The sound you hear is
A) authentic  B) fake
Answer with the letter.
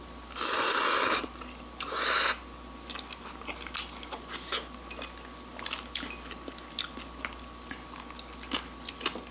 A